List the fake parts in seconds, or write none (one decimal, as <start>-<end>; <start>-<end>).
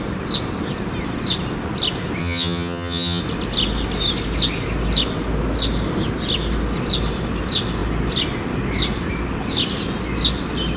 2.2-3.2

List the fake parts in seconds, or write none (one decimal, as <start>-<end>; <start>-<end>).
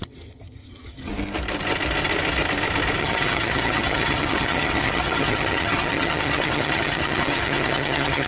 0.0-1.1; 3.0-8.3